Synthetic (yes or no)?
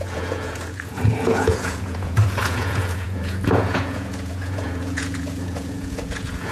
yes